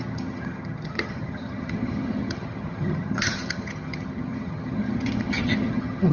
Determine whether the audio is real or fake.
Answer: fake